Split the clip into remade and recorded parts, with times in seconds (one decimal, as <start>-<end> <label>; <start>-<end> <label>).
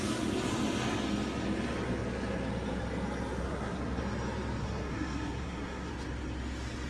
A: 0.0-3.4 recorded; 3.4-4.0 remade; 4.0-4.6 recorded; 4.6-5.9 remade; 5.9-6.9 recorded